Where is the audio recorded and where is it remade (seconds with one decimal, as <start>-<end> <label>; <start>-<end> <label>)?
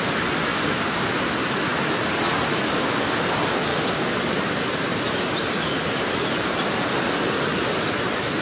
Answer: 0.0-0.5 recorded; 0.5-2.7 remade; 2.7-3.7 recorded; 3.7-6.9 remade; 6.9-8.4 recorded